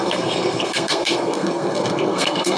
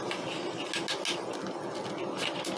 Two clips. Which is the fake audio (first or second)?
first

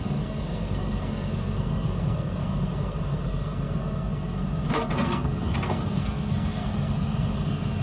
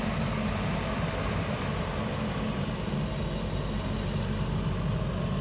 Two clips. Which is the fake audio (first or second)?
first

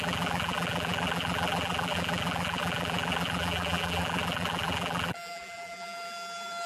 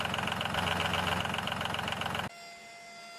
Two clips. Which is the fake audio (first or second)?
first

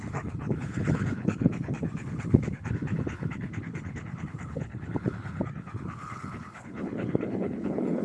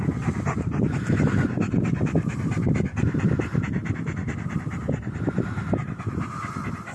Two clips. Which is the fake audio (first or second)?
first